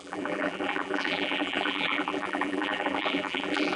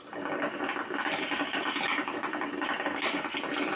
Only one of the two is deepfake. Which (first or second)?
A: first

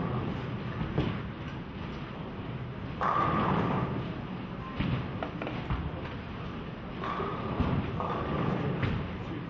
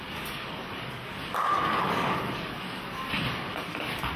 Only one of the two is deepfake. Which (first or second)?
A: second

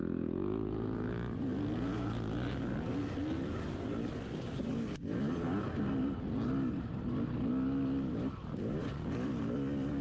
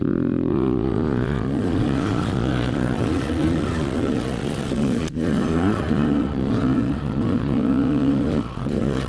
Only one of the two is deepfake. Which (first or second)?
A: second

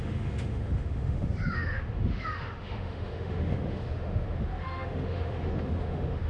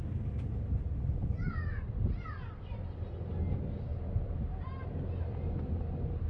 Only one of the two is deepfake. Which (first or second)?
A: first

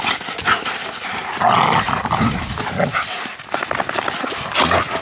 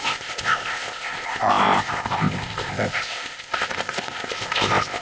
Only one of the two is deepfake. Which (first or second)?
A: second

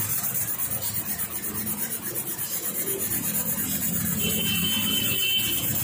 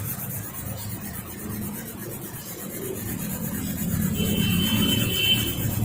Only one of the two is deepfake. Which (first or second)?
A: second